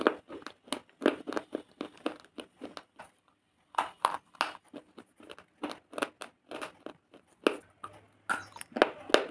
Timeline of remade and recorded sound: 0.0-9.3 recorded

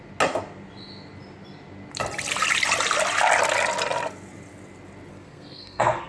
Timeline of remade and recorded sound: 0.0-5.1 recorded; 5.1-6.1 remade